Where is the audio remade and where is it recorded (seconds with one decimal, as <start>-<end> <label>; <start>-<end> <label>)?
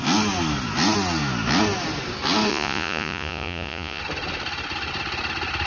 0.0-2.5 recorded; 2.5-4.0 remade; 4.0-5.7 recorded